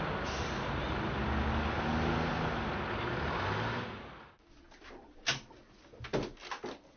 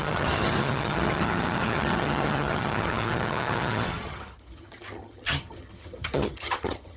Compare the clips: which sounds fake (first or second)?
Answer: second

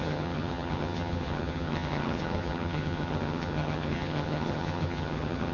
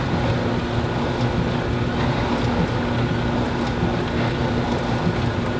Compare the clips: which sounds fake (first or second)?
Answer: first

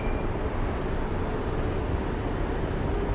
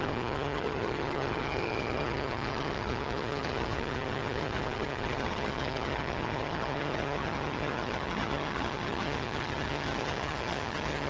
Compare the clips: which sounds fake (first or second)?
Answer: second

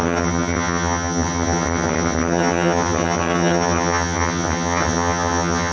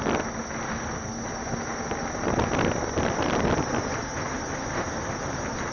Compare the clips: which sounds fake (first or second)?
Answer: first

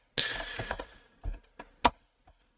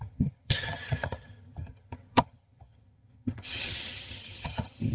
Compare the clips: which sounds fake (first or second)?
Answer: second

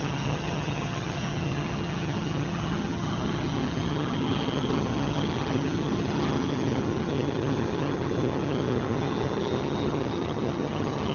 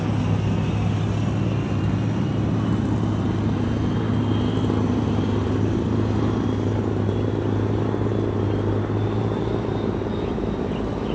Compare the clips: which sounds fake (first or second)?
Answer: first